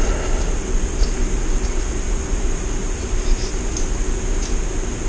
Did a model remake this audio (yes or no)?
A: no